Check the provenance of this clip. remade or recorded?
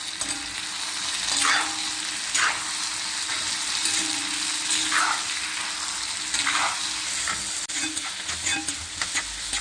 recorded